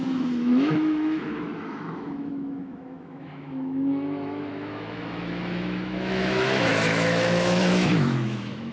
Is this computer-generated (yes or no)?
yes